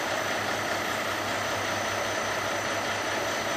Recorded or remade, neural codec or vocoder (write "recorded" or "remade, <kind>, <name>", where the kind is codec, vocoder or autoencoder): recorded